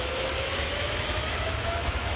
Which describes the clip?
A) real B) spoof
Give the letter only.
B